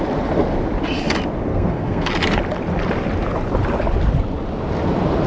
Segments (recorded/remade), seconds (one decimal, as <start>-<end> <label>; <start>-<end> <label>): 0.0-1.5 recorded; 1.5-2.1 remade; 2.1-5.3 recorded